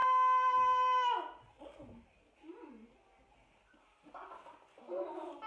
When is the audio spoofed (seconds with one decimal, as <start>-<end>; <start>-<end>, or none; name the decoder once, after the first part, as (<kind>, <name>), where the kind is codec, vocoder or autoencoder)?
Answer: none